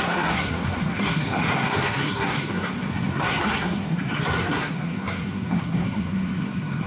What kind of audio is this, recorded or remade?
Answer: remade